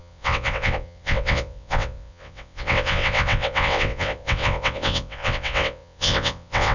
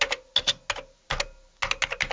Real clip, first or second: second